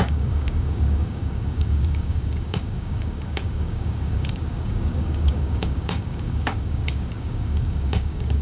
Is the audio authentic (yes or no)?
no